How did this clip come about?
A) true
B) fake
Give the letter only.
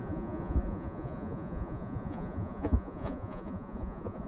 B